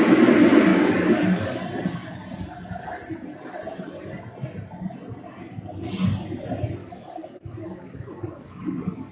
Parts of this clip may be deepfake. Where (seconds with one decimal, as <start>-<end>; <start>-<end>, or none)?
0.7-1.6; 6.8-9.1